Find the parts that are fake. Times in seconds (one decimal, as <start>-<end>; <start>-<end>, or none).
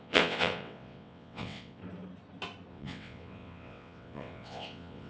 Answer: 0.0-1.8; 2.7-5.1